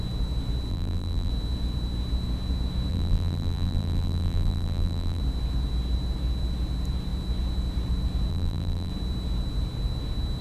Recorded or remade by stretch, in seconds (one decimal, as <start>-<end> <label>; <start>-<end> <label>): 0.0-0.7 recorded; 0.7-1.3 remade; 1.3-2.9 recorded; 2.9-5.2 remade; 5.2-8.3 recorded; 8.3-8.9 remade; 8.9-10.4 recorded

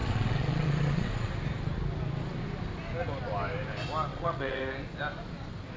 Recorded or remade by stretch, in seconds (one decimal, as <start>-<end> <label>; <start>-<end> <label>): 0.0-1.3 remade; 1.3-4.1 recorded; 4.1-4.6 remade; 4.6-5.8 recorded

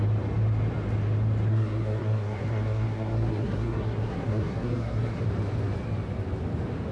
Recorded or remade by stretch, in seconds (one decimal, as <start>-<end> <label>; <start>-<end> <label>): 0.0-1.5 recorded; 1.5-5.2 remade; 5.2-6.9 recorded

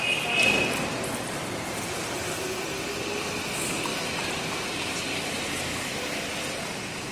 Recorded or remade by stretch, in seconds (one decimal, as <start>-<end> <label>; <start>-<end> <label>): 0.0-3.9 recorded; 3.9-5.9 remade; 5.9-7.1 recorded

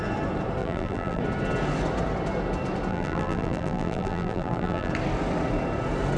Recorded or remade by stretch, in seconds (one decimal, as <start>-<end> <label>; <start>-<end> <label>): 0.0-0.6 recorded; 0.6-1.2 remade; 1.2-2.9 recorded; 2.9-4.9 remade; 4.9-6.2 recorded

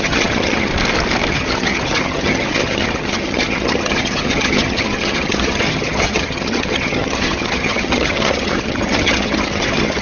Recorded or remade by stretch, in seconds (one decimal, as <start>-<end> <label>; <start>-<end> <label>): 0.0-0.7 remade; 0.7-1.3 recorded; 1.3-10.0 remade